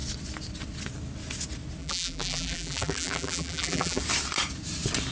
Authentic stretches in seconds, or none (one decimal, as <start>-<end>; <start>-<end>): 0.0-1.8; 4.0-5.1